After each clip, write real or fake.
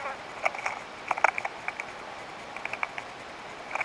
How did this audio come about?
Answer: real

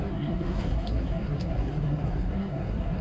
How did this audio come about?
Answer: fake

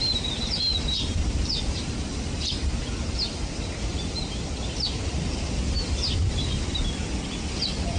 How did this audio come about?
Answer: fake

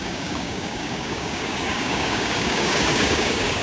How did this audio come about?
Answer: fake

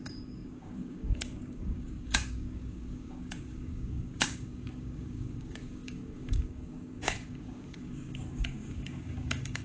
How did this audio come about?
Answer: fake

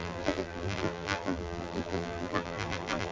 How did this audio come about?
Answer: fake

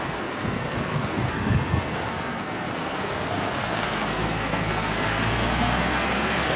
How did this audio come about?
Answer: fake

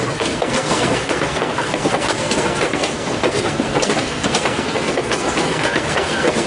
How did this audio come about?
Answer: fake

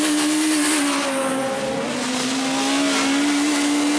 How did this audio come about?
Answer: real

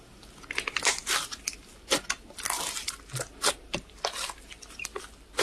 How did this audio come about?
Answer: real